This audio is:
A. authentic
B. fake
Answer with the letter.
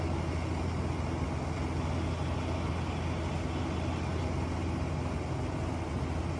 A